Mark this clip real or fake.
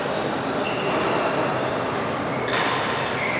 real